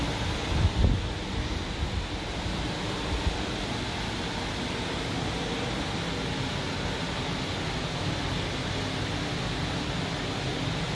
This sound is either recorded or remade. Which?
recorded